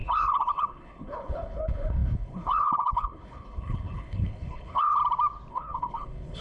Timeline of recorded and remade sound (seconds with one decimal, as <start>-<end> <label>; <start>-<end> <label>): 0.0-5.0 remade; 5.0-5.5 recorded; 5.5-6.4 remade